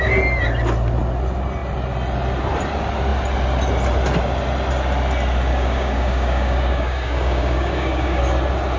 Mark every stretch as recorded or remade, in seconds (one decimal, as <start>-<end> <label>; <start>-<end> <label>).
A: 0.0-5.5 recorded; 5.5-8.2 remade; 8.2-8.8 recorded